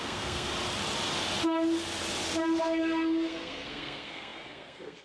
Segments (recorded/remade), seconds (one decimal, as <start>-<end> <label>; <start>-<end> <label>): 0.0-0.5 remade; 0.5-2.6 recorded; 2.6-5.0 remade